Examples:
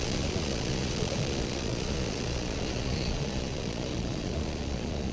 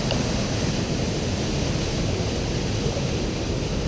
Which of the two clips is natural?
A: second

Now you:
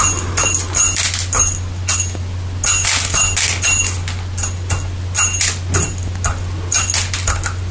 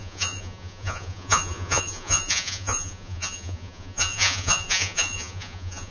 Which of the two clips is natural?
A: first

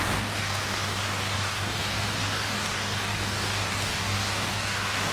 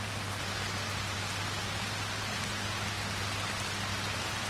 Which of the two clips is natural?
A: second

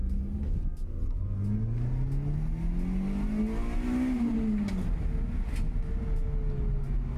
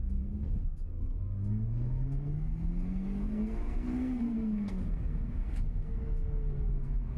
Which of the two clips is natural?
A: first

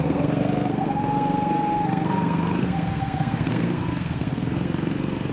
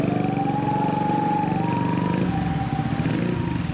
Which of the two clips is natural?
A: second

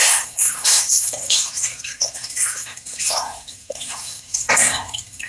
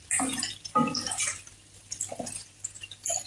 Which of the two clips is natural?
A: second